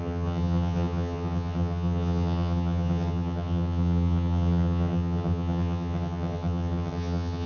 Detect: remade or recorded remade